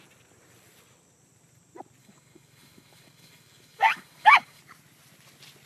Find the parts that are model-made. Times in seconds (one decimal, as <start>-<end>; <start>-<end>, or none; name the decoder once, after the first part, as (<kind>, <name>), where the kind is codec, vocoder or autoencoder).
2.0-4.6 (codec, DAC)